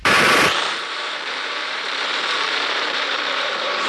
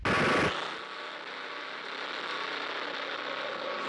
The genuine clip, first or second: second